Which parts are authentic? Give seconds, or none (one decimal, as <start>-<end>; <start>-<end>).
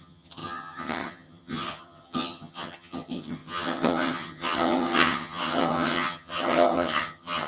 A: none